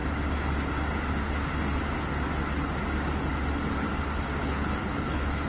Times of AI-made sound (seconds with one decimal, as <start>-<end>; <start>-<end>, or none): 4.4-5.5

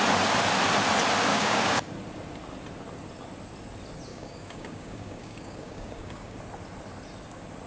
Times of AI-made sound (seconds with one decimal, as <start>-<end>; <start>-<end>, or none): 1.3-1.9; 4.1-6.4

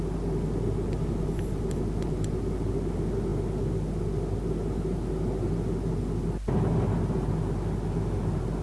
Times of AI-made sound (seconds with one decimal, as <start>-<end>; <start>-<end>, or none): none

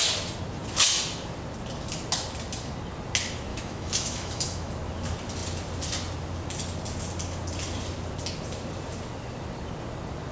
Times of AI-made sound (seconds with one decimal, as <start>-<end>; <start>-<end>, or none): 3.5-4.7

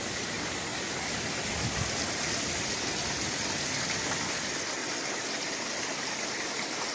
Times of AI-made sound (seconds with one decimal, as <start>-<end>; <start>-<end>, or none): none